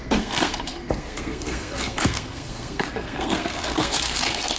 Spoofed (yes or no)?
yes